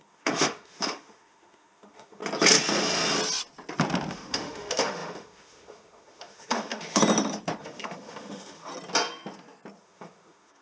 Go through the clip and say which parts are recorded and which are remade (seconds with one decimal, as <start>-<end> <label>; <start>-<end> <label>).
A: 0.0-2.2 remade; 2.2-4.1 recorded; 4.1-7.0 remade; 7.0-7.6 recorded; 7.6-8.7 remade; 8.7-9.8 recorded; 9.8-10.6 remade